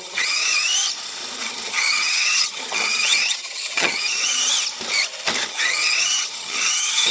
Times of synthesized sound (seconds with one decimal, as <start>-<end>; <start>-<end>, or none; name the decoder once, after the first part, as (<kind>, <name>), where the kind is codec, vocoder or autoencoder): 0.0-0.5 (vocoder, HiFi-GAN); 1.5-4.4; 5.5-7.1